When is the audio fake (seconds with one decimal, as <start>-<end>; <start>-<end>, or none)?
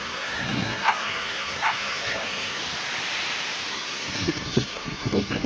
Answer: 0.0-2.6; 3.7-5.5